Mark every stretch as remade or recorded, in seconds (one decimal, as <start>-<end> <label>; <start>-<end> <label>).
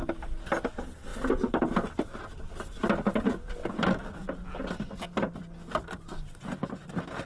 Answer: 0.0-7.3 recorded